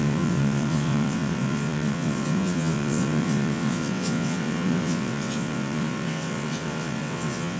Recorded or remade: remade